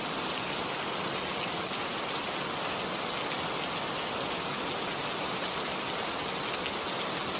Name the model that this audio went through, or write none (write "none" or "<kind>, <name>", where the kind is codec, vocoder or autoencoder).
none